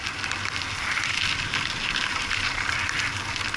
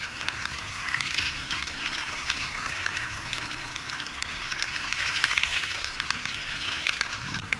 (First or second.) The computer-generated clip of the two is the second